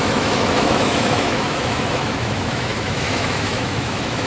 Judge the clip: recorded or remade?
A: remade